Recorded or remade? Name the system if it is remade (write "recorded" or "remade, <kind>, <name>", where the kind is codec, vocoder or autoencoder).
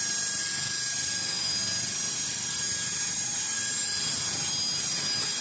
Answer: recorded